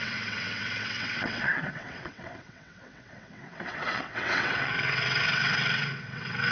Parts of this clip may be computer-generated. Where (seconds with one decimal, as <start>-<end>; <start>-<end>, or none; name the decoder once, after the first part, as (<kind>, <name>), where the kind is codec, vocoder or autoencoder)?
0.0-6.5 (vocoder, WaveNeXt)